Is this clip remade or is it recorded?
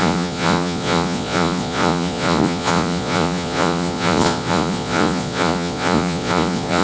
remade